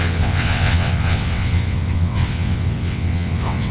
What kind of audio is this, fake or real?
fake